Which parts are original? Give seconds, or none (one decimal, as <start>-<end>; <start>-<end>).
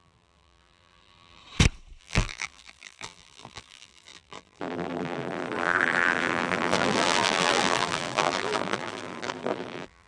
1.4-2.0